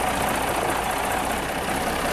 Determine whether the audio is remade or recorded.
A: recorded